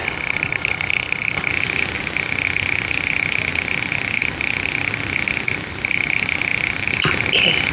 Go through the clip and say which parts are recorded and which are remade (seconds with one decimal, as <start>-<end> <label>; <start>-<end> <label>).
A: 0.0-1.5 remade; 1.5-7.7 recorded

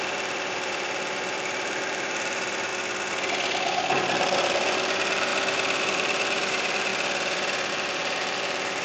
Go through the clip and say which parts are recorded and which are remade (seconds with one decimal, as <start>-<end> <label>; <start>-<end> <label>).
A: 0.0-2.7 remade; 2.7-4.0 recorded; 4.0-5.3 remade; 5.3-5.8 recorded; 5.8-6.9 remade; 6.9-7.7 recorded; 7.7-8.8 remade

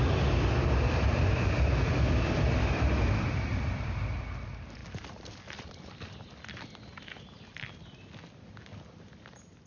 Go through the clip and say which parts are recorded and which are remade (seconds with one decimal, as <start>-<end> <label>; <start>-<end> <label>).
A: 0.0-3.5 recorded; 3.5-4.2 remade; 4.2-4.8 recorded; 4.8-5.9 remade; 5.9-9.7 recorded

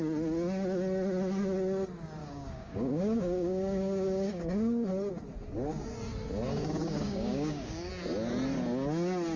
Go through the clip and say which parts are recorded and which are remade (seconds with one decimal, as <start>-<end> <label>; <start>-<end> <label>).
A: 0.0-2.2 recorded; 2.2-4.9 remade; 4.9-6.6 recorded; 6.6-7.9 remade; 7.9-9.4 recorded

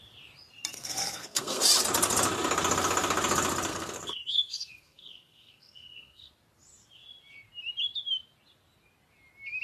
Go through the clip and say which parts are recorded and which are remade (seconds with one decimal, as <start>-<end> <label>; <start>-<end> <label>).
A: 0.0-0.7 recorded; 0.7-1.6 remade; 1.6-3.7 recorded; 3.7-6.3 remade; 6.3-9.6 recorded

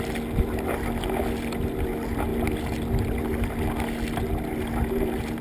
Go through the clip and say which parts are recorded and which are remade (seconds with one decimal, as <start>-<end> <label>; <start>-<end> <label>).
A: 0.0-5.4 recorded

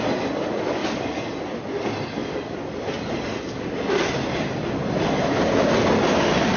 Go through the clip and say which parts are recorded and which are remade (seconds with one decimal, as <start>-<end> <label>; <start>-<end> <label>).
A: 0.0-6.6 recorded